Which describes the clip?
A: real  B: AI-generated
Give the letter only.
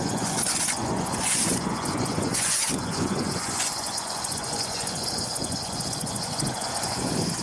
B